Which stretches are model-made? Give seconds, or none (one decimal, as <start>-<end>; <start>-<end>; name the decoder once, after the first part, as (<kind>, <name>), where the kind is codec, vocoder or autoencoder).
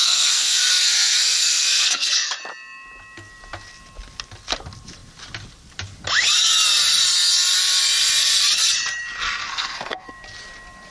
0.0-2.3 (codec, SNAC); 9.4-10.1